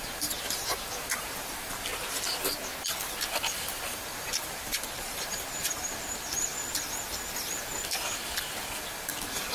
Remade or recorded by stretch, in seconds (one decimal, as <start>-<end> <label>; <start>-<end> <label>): 0.0-1.9 remade; 1.9-3.3 recorded; 3.3-6.5 remade; 6.5-8.7 recorded; 8.7-9.5 remade